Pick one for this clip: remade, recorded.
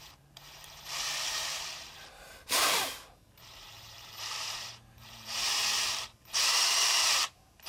remade